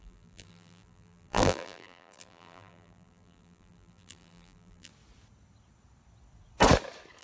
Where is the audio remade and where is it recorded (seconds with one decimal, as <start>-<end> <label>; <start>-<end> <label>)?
0.0-4.9 remade; 4.9-7.2 recorded